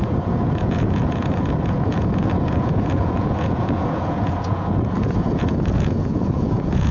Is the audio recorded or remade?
remade